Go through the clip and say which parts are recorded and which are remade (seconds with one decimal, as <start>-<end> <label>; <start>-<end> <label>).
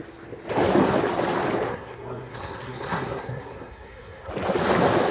0.0-1.7 recorded; 1.7-4.3 remade; 4.3-5.1 recorded